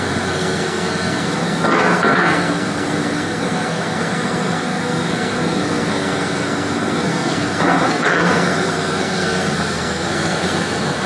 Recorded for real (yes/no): no